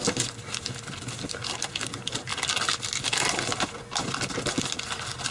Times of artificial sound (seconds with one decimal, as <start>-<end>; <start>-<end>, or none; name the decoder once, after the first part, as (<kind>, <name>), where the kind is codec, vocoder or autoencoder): none